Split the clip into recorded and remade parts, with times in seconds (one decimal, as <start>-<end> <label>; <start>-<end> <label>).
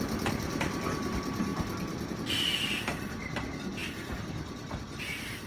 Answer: 0.0-5.5 recorded